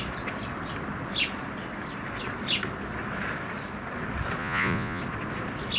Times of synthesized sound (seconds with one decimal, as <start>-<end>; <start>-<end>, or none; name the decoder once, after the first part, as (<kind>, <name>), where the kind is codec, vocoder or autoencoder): 4.4-5.0 (vocoder, Vocos)